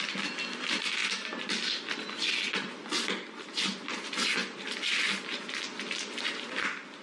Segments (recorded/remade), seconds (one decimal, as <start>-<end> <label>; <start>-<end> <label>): 0.0-7.0 recorded